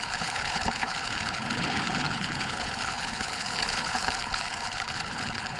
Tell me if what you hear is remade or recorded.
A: remade